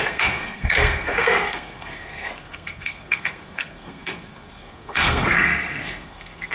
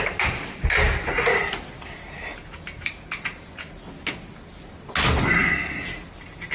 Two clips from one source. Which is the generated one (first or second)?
first